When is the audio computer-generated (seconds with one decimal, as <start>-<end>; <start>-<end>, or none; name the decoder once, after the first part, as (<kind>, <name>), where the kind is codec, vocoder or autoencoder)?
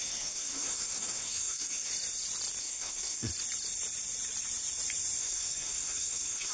0.0-1.9 (codec, SNAC); 2.6-3.3; 5.2-6.5